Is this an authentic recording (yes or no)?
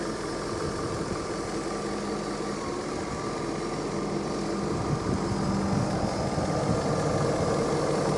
yes